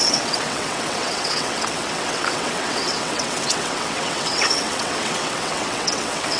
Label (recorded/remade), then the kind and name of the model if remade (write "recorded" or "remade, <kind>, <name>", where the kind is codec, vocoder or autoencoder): remade, vocoder, WaveNeXt